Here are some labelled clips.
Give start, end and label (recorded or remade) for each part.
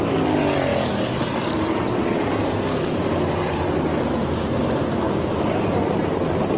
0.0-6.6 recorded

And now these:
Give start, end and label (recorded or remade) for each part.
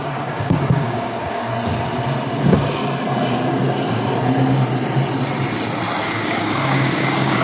0.0-1.5 remade; 1.5-2.4 recorded; 2.4-2.8 remade; 2.8-6.0 recorded; 6.0-7.4 remade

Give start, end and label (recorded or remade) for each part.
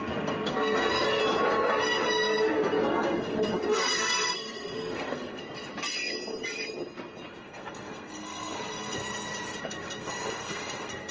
0.0-1.2 remade; 1.2-1.7 recorded; 1.7-5.4 remade; 5.4-7.3 recorded; 7.3-9.0 remade; 9.0-9.6 recorded; 9.6-11.1 remade